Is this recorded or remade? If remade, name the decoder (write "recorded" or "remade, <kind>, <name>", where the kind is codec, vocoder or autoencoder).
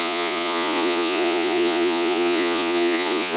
remade, vocoder, Vocos